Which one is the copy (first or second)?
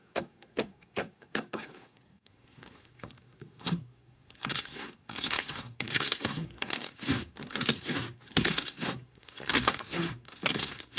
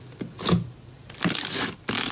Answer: first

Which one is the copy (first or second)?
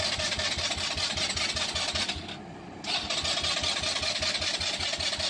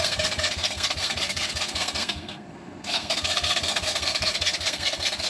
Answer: second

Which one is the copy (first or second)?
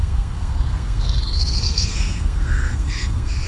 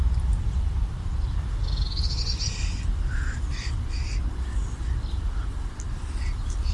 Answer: first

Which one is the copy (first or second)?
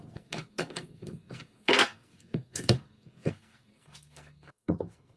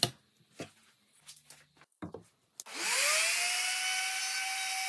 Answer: first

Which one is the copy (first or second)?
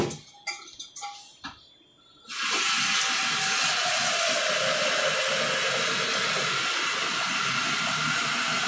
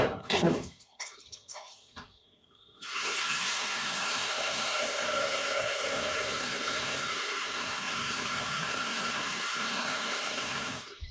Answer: second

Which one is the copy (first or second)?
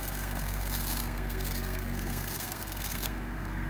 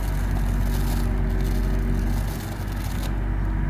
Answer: first